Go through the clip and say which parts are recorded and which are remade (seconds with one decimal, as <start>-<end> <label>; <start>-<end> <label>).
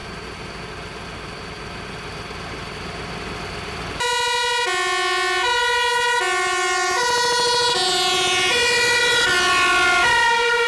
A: 0.0-10.7 recorded